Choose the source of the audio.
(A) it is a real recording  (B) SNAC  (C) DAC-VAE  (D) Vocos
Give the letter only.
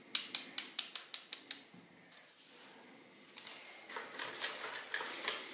A